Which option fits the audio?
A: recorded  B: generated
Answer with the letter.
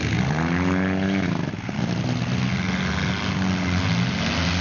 A